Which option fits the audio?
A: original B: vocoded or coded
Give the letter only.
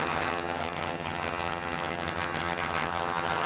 B